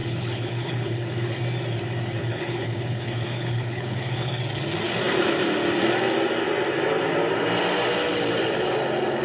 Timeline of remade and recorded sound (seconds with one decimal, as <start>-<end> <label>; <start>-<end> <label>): 0.0-1.4 remade; 1.4-2.2 recorded; 2.2-4.3 remade; 4.3-9.2 recorded